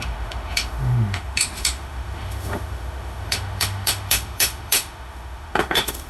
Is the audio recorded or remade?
remade